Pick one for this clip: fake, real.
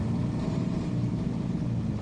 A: fake